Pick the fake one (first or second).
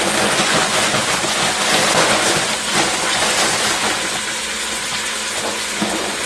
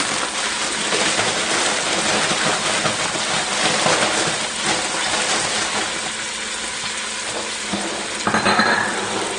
first